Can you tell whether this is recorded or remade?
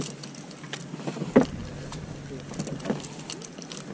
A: recorded